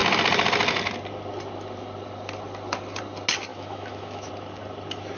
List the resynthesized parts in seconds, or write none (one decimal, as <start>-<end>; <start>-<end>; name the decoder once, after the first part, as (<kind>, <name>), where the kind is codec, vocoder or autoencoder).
3.5-4.3 (autoencoder, DAC-VAE)